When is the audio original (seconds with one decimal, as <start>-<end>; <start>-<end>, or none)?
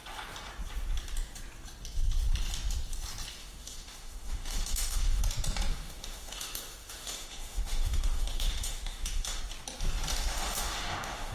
0.0-3.4; 5.2-5.7; 9.4-10.1